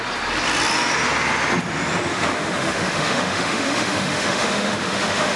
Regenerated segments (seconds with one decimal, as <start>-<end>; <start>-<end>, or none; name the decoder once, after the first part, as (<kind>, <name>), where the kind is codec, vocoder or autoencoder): 2.1-5.4 (autoencoder, DAC-VAE)